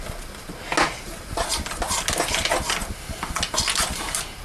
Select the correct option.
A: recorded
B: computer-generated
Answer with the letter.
A